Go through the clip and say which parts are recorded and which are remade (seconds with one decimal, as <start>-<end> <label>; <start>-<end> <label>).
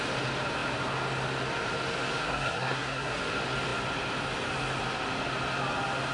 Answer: 0.0-2.2 recorded; 2.2-3.2 remade; 3.2-6.1 recorded